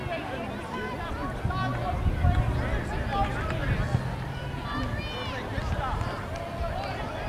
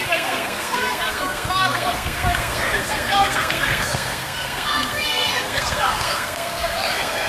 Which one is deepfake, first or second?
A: second